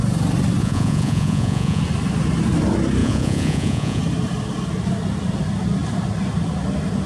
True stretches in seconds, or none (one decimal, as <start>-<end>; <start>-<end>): 0.0-0.6; 1.8-3.0; 4.0-7.1